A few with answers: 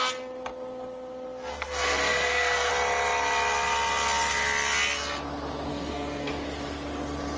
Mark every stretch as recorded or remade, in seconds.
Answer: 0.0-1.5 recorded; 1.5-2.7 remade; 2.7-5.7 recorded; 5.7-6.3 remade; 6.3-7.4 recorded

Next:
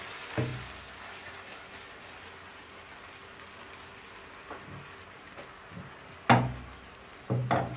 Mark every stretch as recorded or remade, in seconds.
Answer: 0.0-7.8 recorded